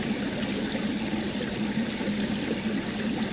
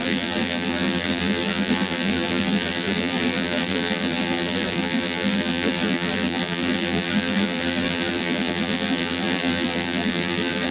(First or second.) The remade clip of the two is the second